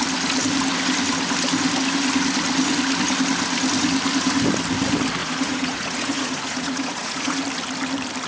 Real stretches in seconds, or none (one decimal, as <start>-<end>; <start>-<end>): 0.0-5.2; 7.4-8.3